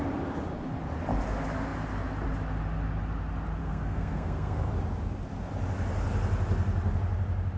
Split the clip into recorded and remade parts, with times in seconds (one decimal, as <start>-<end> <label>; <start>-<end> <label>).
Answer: 0.0-3.6 recorded; 3.6-4.7 remade; 4.7-7.6 recorded